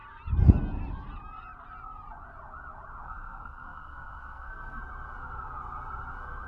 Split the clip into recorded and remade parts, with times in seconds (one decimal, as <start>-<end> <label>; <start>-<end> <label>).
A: 0.0-3.0 recorded; 3.0-4.8 remade; 4.8-6.5 recorded